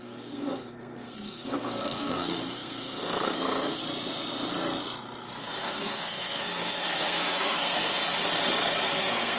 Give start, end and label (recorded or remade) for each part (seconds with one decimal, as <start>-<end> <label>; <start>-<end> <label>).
0.0-3.8 remade; 3.8-5.4 recorded; 5.4-8.0 remade; 8.0-9.0 recorded; 9.0-9.4 remade